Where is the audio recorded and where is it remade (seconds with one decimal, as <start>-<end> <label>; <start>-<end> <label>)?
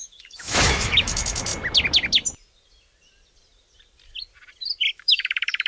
0.0-1.5 remade; 1.5-4.9 recorded; 4.9-5.7 remade